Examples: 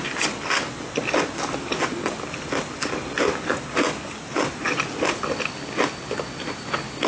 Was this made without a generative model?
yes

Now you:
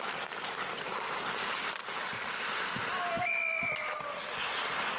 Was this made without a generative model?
yes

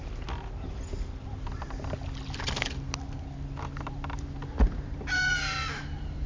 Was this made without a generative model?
yes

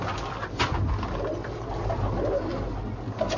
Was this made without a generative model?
yes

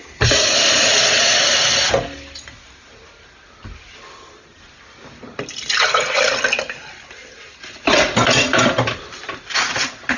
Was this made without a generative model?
yes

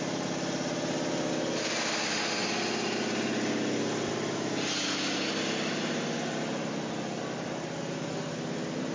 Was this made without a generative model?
yes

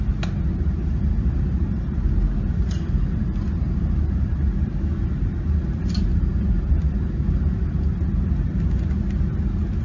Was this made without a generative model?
yes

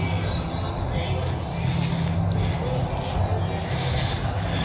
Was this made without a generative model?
yes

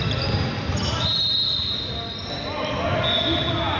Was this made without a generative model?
yes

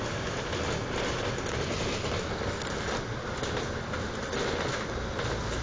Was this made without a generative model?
yes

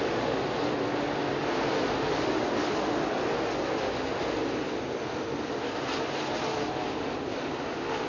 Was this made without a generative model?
yes